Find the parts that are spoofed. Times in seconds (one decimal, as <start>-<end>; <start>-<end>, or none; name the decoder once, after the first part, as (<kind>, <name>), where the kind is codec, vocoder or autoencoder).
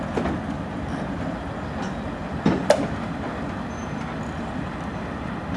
none